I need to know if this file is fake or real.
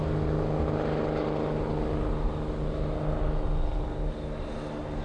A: real